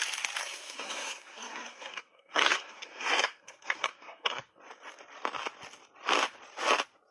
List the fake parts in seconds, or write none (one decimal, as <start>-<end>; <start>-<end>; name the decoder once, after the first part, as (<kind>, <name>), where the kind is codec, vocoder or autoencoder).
0.4-4.6 (codec, SNAC)